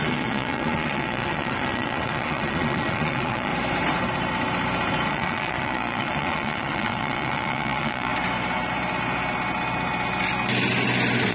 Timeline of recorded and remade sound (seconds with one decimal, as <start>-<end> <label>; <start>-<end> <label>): 0.0-3.5 remade; 3.5-5.1 recorded; 5.1-8.1 remade; 8.1-11.3 recorded